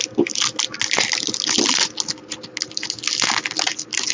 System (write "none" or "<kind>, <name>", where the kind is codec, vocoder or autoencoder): none